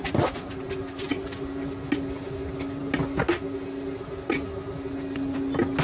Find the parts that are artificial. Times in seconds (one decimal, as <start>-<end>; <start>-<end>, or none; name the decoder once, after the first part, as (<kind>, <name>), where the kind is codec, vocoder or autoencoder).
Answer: none